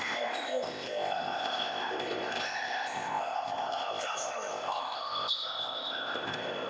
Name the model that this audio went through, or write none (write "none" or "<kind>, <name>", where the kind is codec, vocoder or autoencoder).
codec, ZipCodec